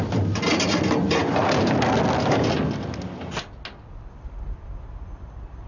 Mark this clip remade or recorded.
recorded